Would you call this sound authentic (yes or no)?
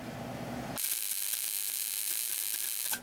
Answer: yes